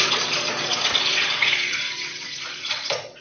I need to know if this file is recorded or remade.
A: remade